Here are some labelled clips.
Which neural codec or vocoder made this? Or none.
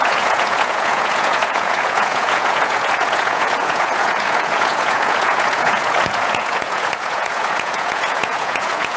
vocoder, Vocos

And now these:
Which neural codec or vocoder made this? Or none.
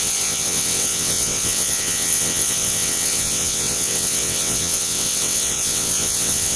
vocoder, WaveNeXt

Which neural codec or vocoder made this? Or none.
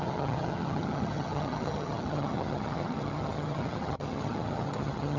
vocoder, HiFi-GAN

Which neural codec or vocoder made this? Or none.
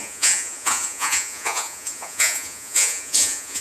vocoder, Vocos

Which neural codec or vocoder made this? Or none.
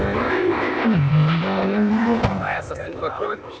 codec, ZipCodec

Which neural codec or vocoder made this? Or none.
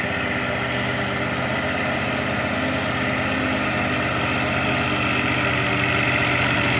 none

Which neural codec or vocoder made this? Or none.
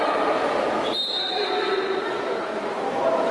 none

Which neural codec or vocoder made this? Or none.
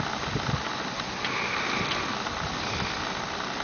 none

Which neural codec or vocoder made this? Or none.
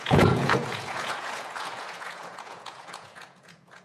vocoder, Vocos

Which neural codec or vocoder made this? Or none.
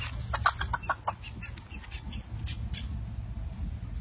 none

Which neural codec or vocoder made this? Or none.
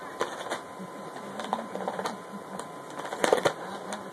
none